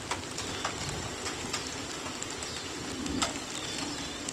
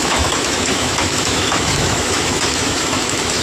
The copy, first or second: second